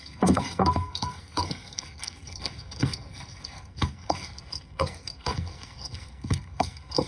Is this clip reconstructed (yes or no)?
yes